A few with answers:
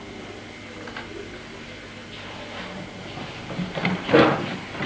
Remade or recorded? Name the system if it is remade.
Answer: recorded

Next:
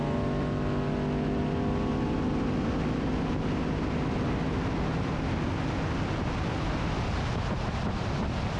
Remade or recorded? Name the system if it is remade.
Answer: recorded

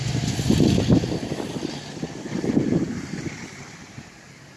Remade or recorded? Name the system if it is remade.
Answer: recorded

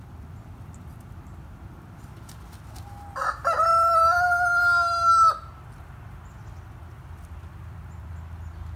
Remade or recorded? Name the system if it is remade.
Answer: recorded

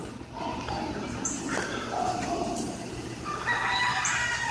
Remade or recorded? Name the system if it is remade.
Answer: recorded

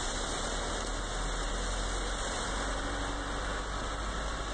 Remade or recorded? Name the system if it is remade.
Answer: recorded